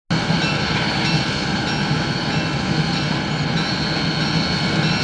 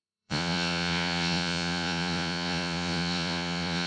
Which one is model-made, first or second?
second